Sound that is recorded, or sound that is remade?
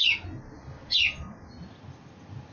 recorded